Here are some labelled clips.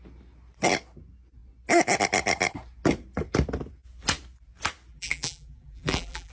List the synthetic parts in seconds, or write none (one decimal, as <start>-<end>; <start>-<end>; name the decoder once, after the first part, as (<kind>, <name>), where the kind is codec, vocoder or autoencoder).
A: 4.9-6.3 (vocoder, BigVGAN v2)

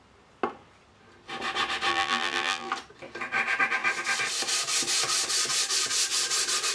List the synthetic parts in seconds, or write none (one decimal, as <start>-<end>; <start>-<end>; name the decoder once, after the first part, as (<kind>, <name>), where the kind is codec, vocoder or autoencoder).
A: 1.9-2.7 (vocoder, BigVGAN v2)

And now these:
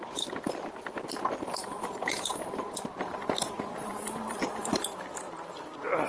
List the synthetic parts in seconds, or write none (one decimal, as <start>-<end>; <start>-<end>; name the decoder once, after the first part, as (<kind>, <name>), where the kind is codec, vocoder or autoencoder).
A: 1.6-4.8 (vocoder, BigVGAN v2)

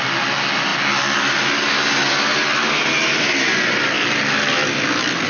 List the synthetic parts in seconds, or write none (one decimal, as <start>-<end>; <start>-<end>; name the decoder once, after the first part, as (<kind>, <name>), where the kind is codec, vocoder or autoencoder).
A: none

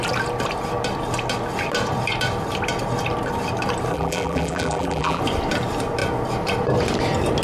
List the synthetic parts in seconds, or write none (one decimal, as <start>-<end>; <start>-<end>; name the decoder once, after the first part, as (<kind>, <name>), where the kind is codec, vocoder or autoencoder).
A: 3.9-5.2 (vocoder, BigVGAN v2)

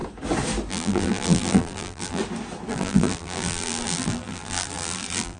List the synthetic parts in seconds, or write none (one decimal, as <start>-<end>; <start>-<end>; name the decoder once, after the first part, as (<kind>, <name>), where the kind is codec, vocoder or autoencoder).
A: 0.7-2.2 (vocoder, BigVGAN v2); 2.7-5.4

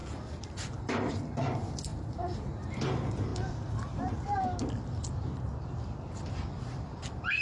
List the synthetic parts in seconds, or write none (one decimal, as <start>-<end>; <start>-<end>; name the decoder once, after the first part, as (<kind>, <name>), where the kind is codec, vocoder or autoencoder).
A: 0.0-1.9 (vocoder, BigVGAN v2); 2.5-3.3; 6.3-7.4